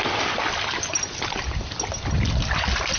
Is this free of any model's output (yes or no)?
yes